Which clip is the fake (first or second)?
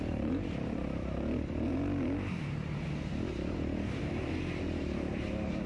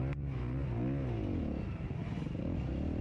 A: first